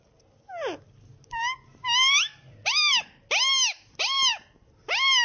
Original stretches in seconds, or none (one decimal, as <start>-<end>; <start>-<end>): 0.0-5.2